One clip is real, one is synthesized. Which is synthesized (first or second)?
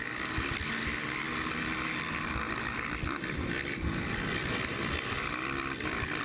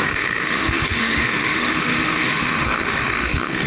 second